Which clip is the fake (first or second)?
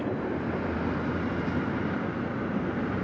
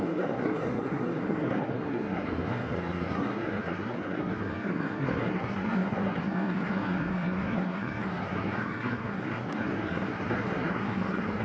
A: second